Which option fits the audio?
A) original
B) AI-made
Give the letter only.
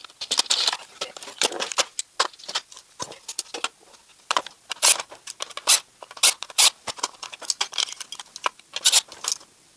A